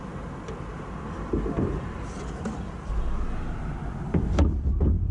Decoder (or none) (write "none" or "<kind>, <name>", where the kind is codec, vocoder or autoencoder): none